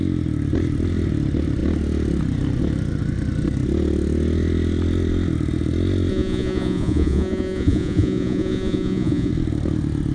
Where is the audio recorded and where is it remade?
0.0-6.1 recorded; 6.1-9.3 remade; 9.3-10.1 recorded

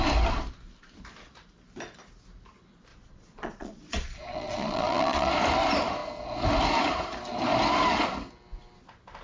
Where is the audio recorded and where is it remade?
0.0-2.9 recorded; 2.9-5.3 remade; 5.3-9.2 recorded

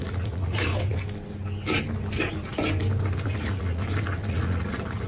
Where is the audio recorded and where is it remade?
0.0-0.7 remade; 0.7-3.4 recorded; 3.4-3.8 remade; 3.8-4.3 recorded; 4.3-5.1 remade